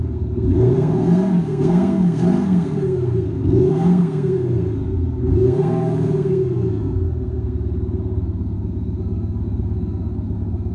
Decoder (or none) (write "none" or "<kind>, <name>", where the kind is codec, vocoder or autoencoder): codec, SNAC